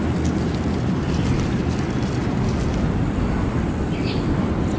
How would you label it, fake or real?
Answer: real